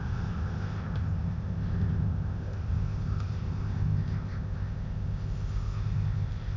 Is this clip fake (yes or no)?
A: yes